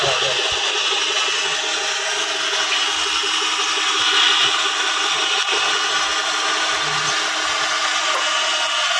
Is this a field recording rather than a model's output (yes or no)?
yes